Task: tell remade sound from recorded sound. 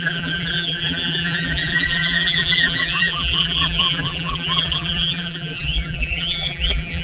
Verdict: remade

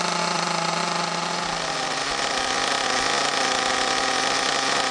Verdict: recorded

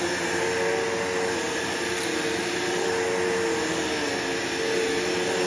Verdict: recorded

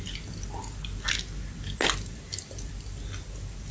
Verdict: recorded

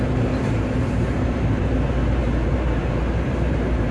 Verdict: remade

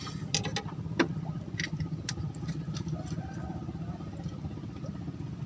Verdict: recorded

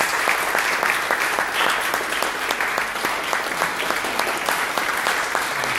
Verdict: recorded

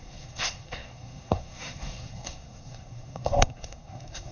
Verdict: remade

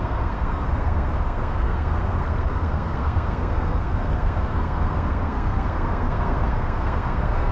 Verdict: remade